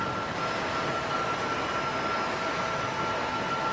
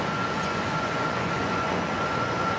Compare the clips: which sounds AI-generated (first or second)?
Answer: second